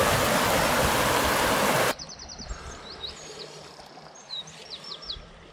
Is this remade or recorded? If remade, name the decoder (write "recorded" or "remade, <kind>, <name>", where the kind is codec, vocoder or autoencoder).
recorded